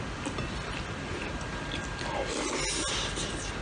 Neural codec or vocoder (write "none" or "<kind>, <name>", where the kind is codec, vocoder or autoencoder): none